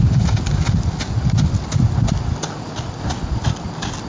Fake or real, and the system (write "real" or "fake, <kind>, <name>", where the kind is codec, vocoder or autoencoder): real